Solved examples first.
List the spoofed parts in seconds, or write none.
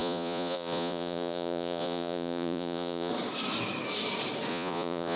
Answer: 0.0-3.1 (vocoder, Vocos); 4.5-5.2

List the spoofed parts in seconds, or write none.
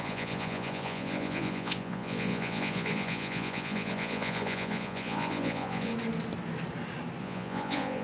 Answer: 0.0-5.9 (vocoder, Vocos); 7.2-8.0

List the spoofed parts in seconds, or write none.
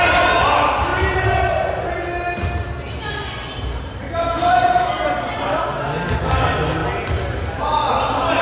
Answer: none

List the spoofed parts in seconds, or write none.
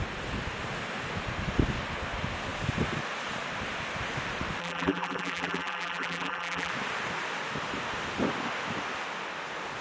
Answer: 4.6-6.7 (vocoder, BigVGAN v2)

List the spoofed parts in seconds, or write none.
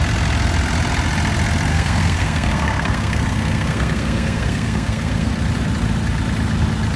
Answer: 1.7-5.3 (codec, SNAC)